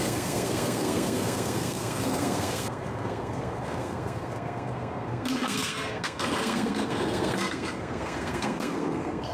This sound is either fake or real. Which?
fake